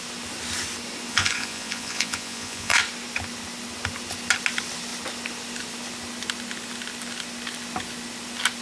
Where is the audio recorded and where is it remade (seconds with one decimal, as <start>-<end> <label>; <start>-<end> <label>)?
0.0-1.1 recorded; 1.1-2.8 remade; 2.8-8.6 recorded